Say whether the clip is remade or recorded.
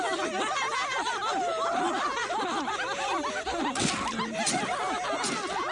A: recorded